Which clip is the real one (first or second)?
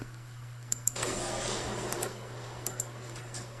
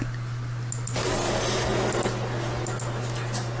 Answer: second